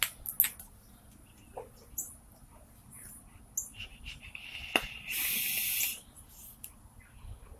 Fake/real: real